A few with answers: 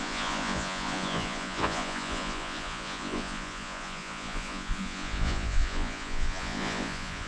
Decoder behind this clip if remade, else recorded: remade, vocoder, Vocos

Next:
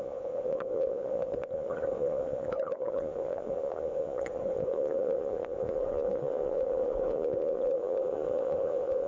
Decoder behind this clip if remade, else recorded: remade, vocoder, Vocos